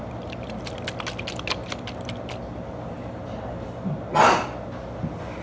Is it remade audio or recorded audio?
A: recorded